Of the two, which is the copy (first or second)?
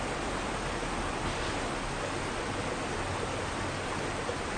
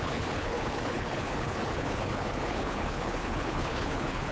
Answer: second